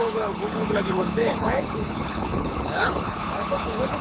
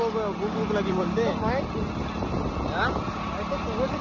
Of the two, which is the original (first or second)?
second